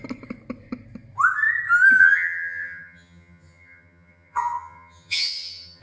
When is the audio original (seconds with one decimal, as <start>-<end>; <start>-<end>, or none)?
0.0-2.0